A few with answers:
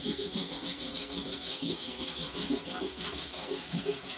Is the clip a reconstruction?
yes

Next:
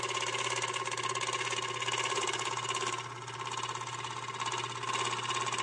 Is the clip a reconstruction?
no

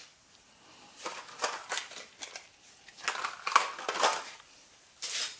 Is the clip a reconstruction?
no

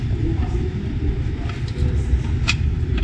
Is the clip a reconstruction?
no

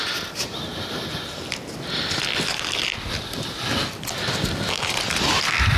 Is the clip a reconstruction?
no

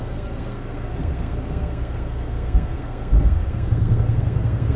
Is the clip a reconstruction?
yes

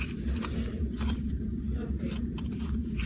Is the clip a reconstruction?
yes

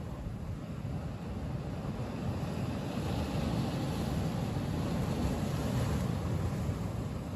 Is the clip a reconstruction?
no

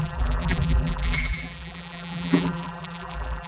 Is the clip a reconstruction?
yes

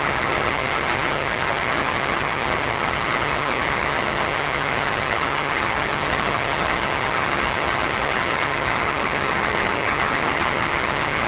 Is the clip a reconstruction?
yes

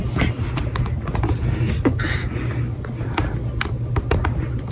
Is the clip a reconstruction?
no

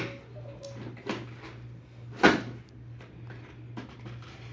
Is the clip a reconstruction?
no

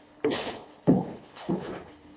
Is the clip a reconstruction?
yes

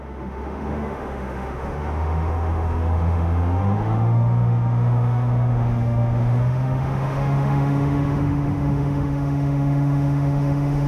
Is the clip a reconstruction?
yes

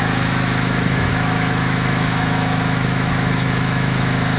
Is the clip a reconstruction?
yes